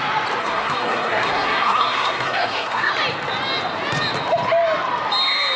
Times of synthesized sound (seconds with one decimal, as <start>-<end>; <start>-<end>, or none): 0.4-2.9